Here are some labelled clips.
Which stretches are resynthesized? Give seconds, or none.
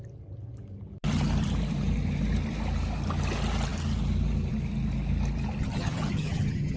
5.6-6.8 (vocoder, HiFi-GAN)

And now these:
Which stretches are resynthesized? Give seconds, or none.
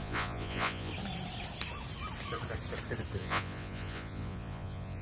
0.0-0.9 (vocoder, Vocos); 3.2-5.0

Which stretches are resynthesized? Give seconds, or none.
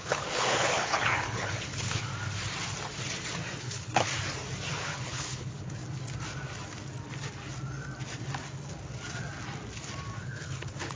0.0-2.1 (codec, HILCodec); 3.6-4.1; 4.7-5.8; 10.2-11.0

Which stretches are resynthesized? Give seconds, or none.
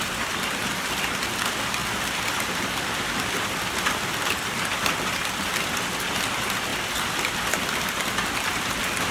none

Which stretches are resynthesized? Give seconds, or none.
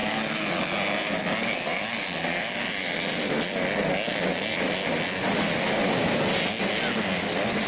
none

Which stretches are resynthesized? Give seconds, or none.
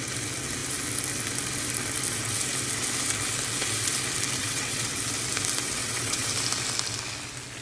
4.4-5.0 (vocoder, WaveNeXt); 5.8-6.3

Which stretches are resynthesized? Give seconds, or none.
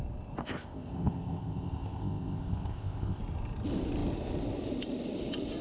0.4-3.2 (codec, ZipCodec)